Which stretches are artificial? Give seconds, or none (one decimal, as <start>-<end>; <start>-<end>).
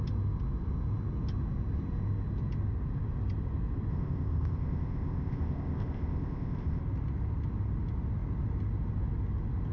3.9-6.8